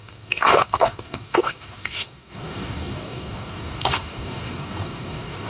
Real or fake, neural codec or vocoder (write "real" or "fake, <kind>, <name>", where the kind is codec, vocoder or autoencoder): fake, codec, DAC